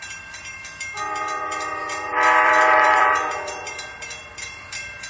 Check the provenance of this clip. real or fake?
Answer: fake